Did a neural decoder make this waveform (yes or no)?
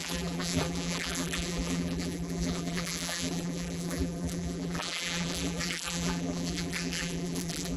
yes